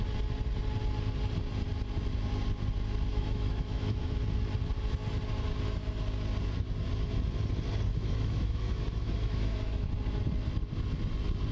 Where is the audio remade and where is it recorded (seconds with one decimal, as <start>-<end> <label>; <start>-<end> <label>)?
0.0-3.1 recorded; 3.1-4.2 remade; 4.2-7.9 recorded; 7.9-9.9 remade; 9.9-11.5 recorded